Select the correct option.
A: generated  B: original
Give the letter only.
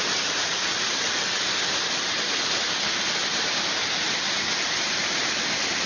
B